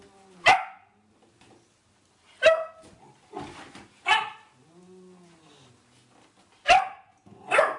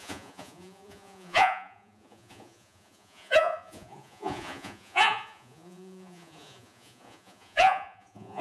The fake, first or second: second